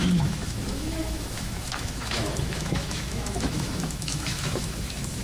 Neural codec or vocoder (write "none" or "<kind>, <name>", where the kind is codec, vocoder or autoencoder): autoencoder, DAC-VAE